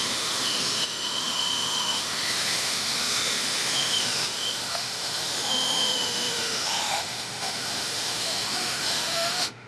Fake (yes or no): yes